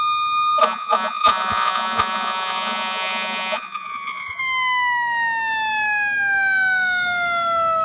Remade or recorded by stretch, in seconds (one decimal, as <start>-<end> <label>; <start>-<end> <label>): 0.0-0.6 recorded; 0.6-4.4 remade; 4.4-7.8 recorded